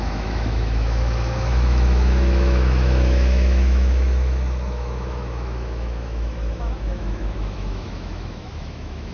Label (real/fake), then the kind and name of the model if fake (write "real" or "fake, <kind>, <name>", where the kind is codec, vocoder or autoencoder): fake, autoencoder, DAC-VAE